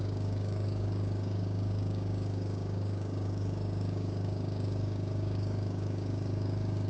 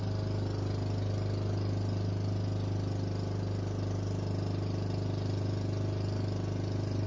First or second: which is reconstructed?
first